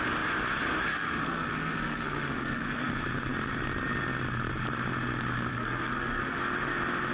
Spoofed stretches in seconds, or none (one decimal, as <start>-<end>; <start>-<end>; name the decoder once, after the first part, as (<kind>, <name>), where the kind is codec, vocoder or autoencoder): 0.9-2.9 (codec, SNAC); 5.5-6.4